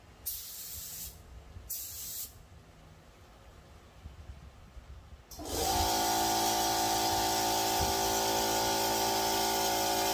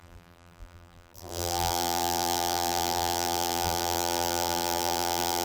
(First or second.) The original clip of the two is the first